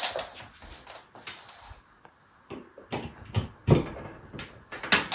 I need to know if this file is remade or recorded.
recorded